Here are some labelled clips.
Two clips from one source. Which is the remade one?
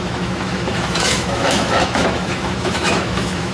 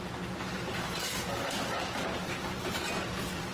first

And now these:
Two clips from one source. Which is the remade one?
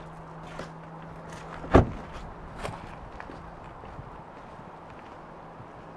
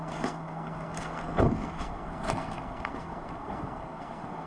second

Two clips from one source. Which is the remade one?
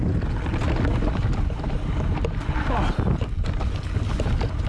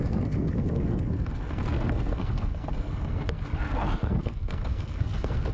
second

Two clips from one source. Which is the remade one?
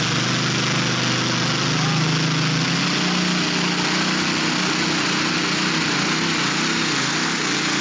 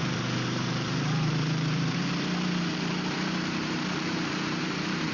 second